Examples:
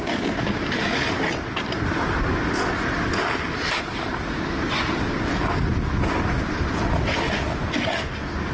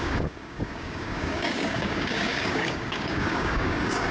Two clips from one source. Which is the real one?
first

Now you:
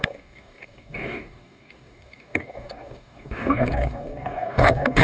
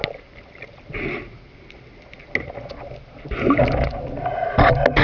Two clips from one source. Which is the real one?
second